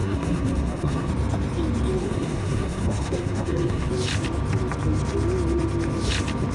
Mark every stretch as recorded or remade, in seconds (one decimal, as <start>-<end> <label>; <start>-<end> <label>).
0.0-1.1 remade; 1.1-2.0 recorded; 2.0-3.9 remade; 3.9-6.5 recorded